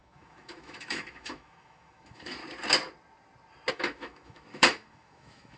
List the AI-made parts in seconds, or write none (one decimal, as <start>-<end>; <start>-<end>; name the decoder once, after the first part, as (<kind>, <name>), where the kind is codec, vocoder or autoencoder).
0.0-2.4 (autoencoder, DAC-VAE); 3.7-5.6